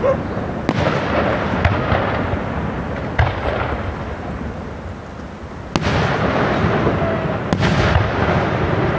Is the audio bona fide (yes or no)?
yes